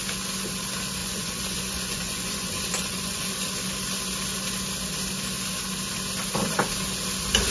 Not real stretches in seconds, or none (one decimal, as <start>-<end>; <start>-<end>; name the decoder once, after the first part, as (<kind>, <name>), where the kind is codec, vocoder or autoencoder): 1.0-3.3 (vocoder, Vocos)